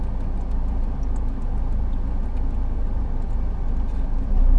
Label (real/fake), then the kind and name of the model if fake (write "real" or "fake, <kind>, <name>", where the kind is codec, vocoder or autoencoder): real